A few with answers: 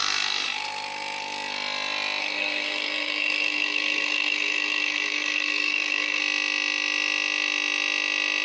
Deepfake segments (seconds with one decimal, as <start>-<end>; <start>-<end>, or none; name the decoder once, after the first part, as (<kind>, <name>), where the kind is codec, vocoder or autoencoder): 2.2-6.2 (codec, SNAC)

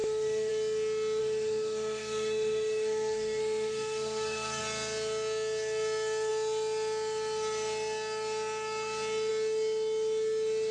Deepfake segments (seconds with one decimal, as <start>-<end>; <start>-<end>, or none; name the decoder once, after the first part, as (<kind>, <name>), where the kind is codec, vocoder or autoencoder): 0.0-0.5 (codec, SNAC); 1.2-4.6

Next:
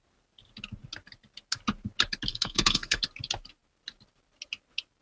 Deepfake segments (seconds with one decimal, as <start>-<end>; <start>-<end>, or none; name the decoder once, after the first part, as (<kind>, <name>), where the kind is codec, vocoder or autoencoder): 2.3-3.0 (codec, SNAC)

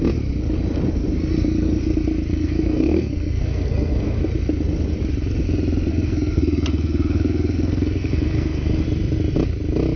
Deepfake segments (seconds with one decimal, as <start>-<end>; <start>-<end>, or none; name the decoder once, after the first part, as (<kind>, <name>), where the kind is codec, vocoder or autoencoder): 2.3-4.2 (codec, SNAC); 5.9-8.8

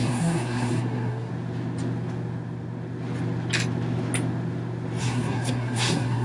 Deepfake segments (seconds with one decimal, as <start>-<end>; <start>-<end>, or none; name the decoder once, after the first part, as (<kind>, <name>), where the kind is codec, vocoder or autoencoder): 0.0-1.3 (codec, SNAC); 5.0-6.2